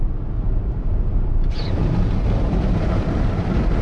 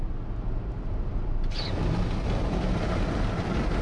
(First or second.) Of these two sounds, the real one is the second